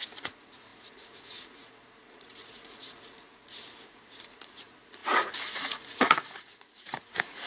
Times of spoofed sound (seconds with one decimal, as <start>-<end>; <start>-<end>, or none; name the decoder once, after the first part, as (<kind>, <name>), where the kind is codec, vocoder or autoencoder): 0.0-7.5 (vocoder, Vocos)

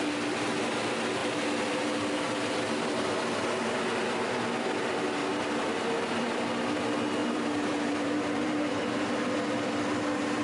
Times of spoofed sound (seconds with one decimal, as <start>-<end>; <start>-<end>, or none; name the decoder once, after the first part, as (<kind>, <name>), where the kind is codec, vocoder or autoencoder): 5.2-5.7 (vocoder, BigVGAN v2); 7.2-8.8

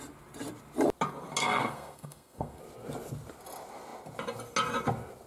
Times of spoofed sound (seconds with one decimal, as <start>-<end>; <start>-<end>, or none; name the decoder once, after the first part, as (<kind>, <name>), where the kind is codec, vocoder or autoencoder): 1.4-2.6 (codec, SNAC)

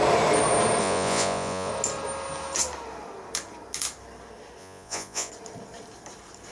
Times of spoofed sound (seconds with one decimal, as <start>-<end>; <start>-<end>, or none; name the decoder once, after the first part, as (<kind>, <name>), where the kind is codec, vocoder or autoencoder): 0.8-1.7 (vocoder, Vocos); 4.6-5.3

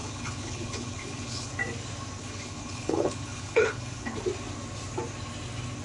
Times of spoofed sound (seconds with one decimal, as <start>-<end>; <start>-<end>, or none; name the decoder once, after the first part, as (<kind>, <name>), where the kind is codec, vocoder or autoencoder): 0.0-1.5 (codec, HILCodec); 2.2-4.2